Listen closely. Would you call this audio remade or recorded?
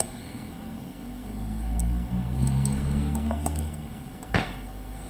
remade